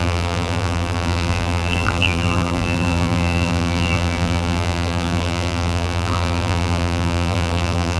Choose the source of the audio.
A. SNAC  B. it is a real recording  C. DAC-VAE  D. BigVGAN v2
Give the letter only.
D